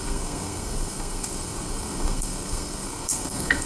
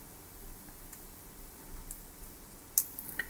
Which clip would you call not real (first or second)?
first